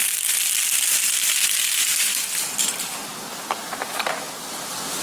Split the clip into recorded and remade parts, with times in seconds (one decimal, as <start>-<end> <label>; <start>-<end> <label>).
0.0-5.0 recorded